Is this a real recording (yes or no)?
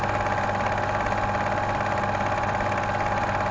yes